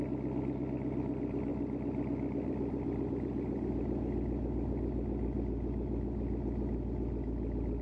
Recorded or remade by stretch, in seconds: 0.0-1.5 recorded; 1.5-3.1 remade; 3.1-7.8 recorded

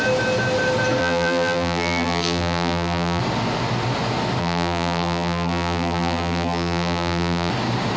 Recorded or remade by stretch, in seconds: 0.0-1.0 recorded; 1.0-3.2 remade; 3.2-4.4 recorded; 4.4-7.5 remade; 7.5-8.0 recorded

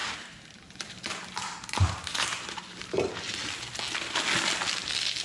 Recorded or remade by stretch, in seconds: 0.0-3.1 remade; 3.1-5.2 recorded